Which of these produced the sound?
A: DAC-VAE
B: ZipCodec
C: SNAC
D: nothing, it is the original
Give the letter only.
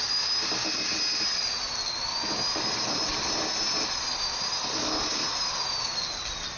D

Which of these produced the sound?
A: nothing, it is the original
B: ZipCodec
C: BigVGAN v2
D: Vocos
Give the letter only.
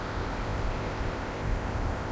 B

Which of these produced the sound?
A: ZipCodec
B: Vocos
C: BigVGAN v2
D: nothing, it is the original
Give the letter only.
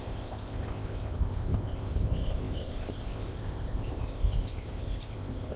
A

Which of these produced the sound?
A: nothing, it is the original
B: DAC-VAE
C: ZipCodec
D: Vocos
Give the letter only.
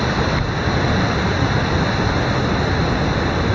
A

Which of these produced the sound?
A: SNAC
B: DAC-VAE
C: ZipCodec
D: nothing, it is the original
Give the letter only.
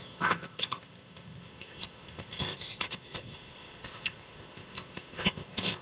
C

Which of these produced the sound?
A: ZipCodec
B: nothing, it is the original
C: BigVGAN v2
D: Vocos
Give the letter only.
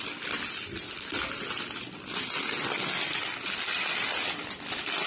B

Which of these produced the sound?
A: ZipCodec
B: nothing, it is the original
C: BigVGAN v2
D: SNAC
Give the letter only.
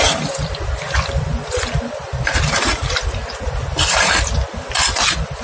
B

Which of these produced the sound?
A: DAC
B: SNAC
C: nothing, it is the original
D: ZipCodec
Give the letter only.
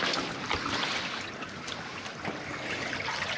C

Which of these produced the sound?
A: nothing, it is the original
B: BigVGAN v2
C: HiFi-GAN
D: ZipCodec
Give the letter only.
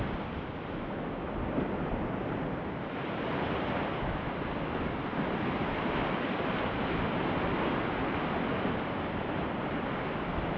A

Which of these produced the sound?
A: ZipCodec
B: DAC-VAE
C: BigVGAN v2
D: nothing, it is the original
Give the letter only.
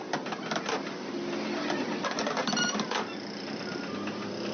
D